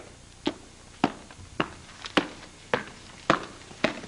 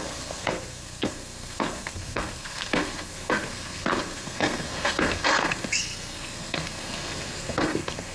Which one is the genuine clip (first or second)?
first